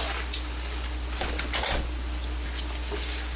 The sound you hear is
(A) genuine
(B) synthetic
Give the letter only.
A